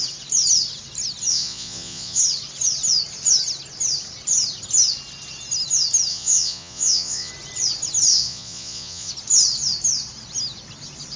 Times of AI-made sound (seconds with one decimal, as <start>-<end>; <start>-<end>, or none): 1.3-2.2; 6.1-7.3; 8.1-9.1